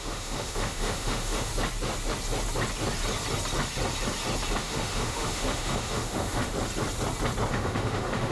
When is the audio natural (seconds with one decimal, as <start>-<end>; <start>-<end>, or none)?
1.5-4.6; 6.5-7.5